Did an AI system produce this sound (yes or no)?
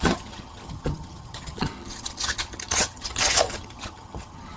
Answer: yes